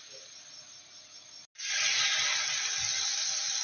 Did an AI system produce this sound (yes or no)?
no